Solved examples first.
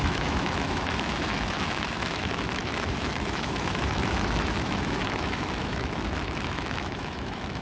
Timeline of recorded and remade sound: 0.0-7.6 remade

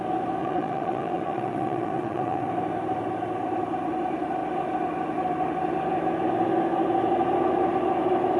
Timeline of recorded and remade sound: 0.0-0.4 recorded; 0.4-2.5 remade; 2.5-8.4 recorded

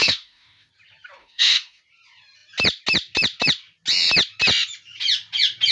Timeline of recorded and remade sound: 0.0-0.7 remade; 0.7-1.2 recorded; 1.2-1.8 remade; 1.8-5.7 recorded

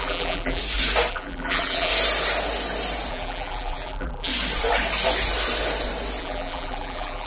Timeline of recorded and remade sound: 0.0-0.6 remade; 0.6-1.1 recorded; 1.1-1.9 remade; 1.9-3.1 recorded; 3.1-4.3 remade; 4.3-6.2 recorded; 6.2-7.3 remade

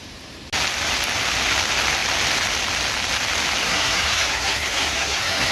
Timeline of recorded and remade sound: 0.0-3.6 recorded; 3.6-5.5 remade